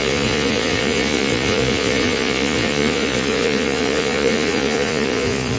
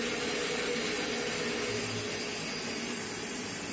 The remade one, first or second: first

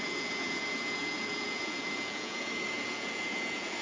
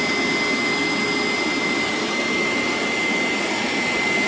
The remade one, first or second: first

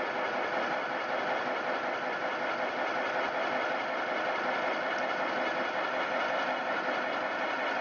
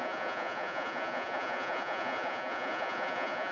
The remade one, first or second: second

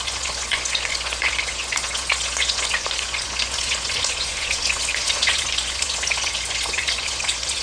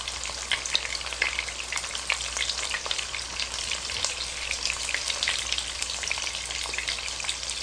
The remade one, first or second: first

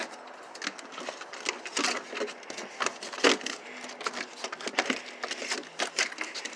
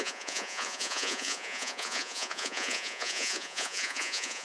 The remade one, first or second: second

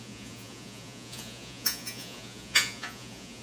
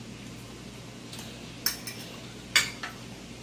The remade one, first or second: first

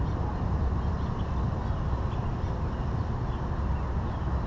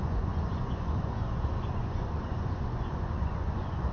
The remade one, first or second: second